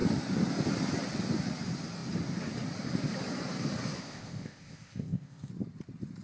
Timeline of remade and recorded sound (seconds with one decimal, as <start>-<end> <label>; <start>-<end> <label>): 0.0-4.0 recorded; 4.0-5.5 remade; 5.5-6.2 recorded